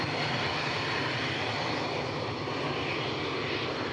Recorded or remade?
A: recorded